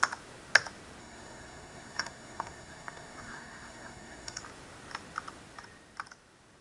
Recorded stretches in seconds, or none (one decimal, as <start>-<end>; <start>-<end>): 0.0-1.0; 4.4-6.6